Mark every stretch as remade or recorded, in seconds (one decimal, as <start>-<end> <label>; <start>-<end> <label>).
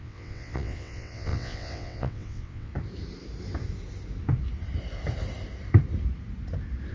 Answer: 0.0-2.7 remade; 2.7-6.9 recorded